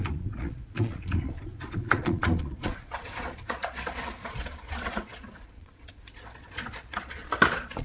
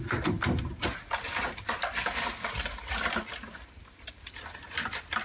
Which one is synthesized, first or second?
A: first